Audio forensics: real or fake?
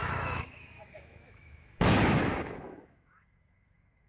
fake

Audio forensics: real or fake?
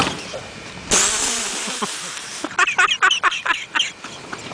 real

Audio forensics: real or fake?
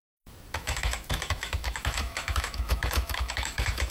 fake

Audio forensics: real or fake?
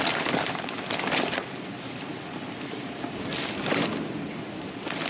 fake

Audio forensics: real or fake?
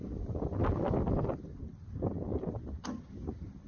real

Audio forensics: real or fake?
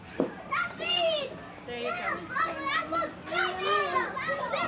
real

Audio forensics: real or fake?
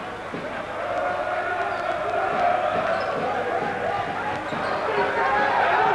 real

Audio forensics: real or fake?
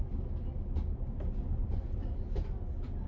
real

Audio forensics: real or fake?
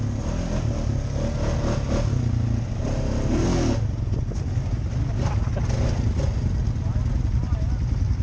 real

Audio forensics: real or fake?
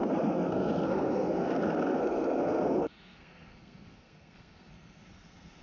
fake